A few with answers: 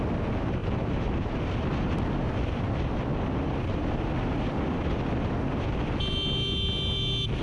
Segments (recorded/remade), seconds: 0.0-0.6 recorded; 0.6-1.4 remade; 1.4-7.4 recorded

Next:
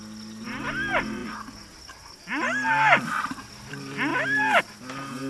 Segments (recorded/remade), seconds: 0.0-4.1 recorded; 4.1-4.6 remade; 4.6-5.3 recorded

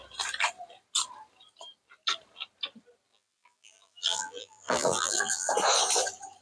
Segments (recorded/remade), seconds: 0.0-3.1 recorded; 3.1-5.5 remade; 5.5-6.4 recorded

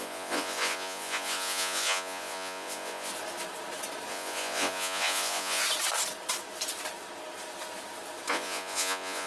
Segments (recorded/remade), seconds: 0.0-3.1 remade; 3.1-4.1 recorded; 4.1-5.6 remade; 5.6-8.3 recorded; 8.3-9.3 remade

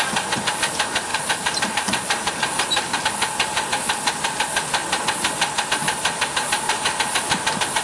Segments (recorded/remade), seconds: 0.0-1.1 recorded; 1.1-3.0 remade; 3.0-7.8 recorded

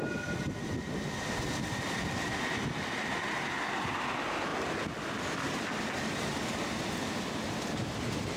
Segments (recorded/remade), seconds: 0.0-8.4 recorded

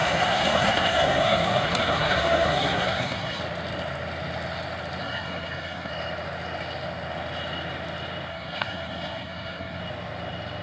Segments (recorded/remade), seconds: 0.0-3.4 remade; 3.4-5.0 recorded; 5.0-5.9 remade; 5.9-8.3 recorded; 8.3-9.8 remade; 9.8-10.6 recorded